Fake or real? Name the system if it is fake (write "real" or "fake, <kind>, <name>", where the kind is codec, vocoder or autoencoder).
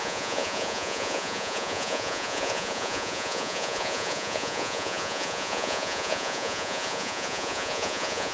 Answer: fake, vocoder, Vocos